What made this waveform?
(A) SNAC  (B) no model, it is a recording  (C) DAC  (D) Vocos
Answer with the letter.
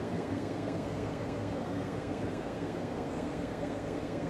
A